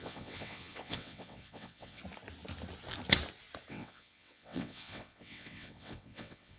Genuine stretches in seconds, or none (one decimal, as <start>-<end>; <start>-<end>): 2.0-3.7